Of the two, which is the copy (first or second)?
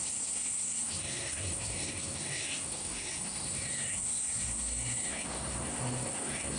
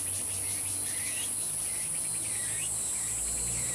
first